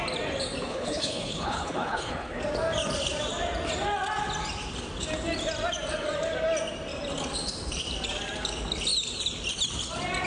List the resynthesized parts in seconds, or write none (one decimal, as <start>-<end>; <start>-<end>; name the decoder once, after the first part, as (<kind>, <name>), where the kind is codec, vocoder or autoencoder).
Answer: 0.7-2.4 (codec, HILCodec)